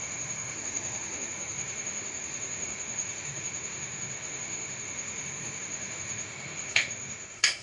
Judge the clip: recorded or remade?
remade